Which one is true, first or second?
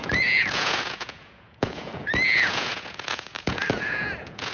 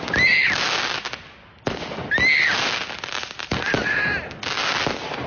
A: second